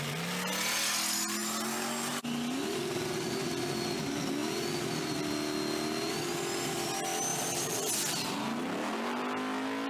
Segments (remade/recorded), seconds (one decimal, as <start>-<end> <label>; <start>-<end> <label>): 0.0-9.9 recorded